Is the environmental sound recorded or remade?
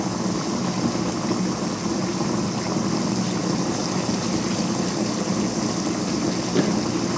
recorded